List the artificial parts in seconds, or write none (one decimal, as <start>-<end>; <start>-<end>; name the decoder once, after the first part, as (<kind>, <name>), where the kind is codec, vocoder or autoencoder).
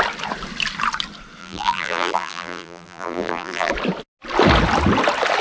1.4-3.7 (vocoder, BigVGAN v2)